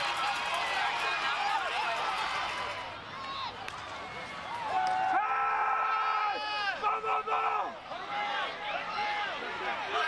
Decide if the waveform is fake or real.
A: real